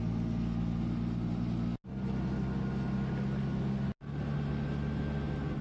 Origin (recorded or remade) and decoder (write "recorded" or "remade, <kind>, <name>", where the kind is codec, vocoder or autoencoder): recorded